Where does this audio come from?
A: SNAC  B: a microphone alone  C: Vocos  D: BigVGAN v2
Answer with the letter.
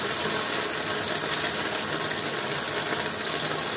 B